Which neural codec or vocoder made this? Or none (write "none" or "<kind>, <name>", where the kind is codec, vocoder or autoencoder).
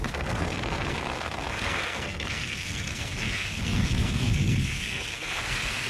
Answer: codec, SNAC